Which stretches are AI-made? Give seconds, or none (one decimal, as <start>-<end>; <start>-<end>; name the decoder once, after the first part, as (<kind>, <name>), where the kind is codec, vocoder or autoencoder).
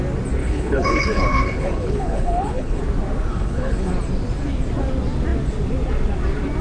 0.4-2.8 (codec, HILCodec); 3.3-3.9